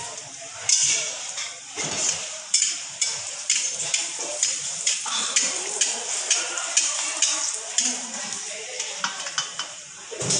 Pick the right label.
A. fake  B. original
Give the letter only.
A